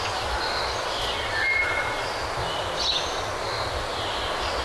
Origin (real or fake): real